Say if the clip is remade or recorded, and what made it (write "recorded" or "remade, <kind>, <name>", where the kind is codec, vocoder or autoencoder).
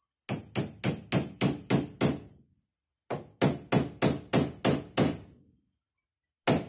recorded